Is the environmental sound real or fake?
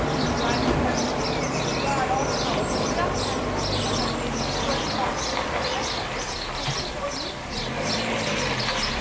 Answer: real